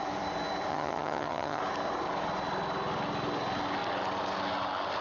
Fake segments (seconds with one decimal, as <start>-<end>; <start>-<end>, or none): 0.7-1.6